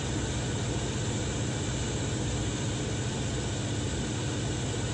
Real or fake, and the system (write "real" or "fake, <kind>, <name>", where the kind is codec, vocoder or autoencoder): real